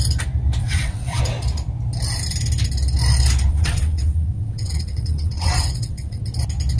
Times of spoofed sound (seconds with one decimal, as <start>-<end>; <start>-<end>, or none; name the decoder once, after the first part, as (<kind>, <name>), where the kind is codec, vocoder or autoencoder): 0.6-1.2 (vocoder, WaveNeXt); 3.5-6.2